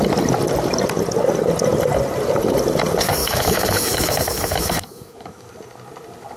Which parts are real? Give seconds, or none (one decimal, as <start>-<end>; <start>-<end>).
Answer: 0.0-3.2; 5.5-6.4